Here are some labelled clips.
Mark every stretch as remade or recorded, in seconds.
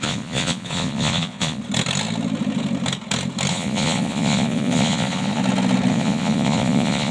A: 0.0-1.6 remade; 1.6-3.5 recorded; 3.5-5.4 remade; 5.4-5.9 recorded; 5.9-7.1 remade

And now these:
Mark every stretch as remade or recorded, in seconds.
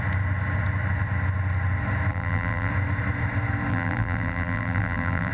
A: 0.0-2.1 recorded; 2.1-2.7 remade; 2.7-3.7 recorded; 3.7-5.3 remade